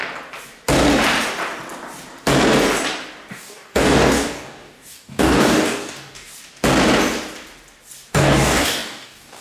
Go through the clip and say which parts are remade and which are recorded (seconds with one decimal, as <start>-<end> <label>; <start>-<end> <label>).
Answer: 0.0-3.3 recorded; 3.3-6.3 remade; 6.3-8.1 recorded; 8.1-9.4 remade